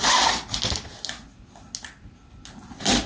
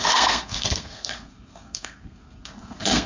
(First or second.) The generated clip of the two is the second